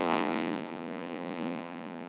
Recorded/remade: remade